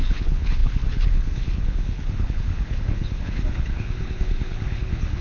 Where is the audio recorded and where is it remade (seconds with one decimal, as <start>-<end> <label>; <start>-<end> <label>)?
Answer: 0.0-5.2 remade